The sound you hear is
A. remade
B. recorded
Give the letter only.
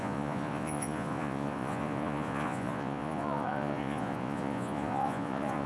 A